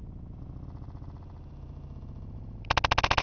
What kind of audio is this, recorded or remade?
recorded